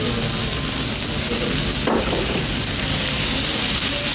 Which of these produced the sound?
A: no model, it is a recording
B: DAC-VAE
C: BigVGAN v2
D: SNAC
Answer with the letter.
A